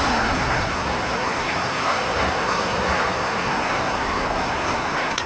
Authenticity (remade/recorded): remade